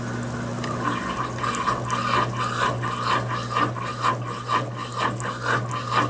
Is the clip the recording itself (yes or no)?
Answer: yes